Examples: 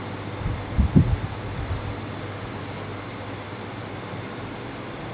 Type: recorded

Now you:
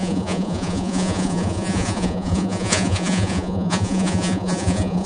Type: remade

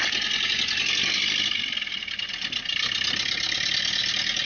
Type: recorded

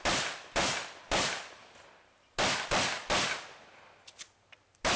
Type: recorded